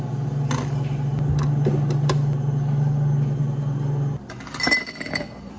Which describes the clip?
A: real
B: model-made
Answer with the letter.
A